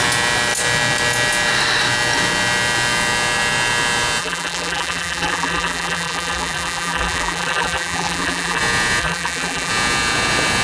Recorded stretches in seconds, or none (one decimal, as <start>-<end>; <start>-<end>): 0.0-4.2; 8.6-9.0; 9.7-10.6